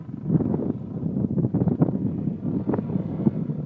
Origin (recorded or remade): recorded